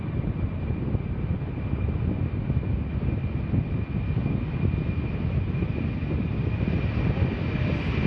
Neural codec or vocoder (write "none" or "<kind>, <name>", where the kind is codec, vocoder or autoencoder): none